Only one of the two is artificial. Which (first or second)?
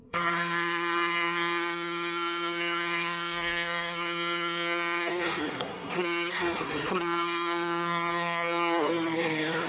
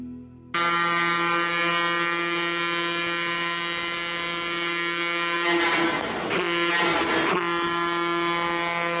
first